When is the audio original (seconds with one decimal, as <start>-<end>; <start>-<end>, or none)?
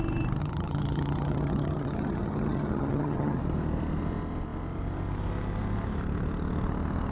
0.0-0.4; 3.4-7.1